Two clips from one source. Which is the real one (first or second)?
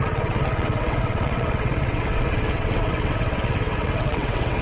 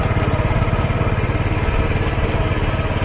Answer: second